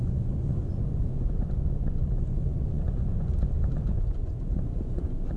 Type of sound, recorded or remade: remade